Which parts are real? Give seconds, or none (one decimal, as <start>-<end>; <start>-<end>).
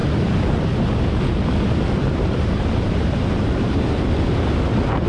0.0-2.0; 3.9-5.1